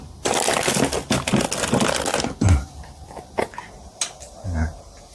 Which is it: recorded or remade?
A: recorded